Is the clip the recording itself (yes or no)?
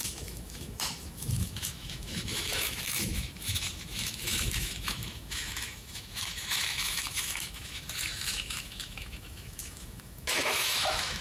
no